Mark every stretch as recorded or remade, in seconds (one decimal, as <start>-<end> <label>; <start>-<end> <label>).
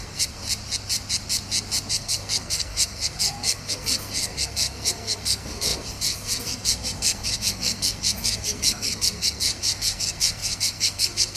0.0-0.4 remade; 0.4-1.9 recorded; 1.9-11.4 remade